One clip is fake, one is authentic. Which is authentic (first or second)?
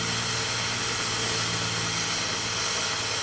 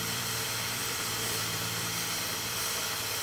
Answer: first